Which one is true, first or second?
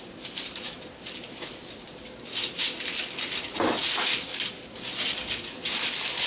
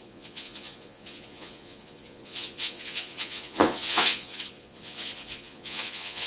first